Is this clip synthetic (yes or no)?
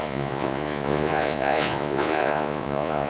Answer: yes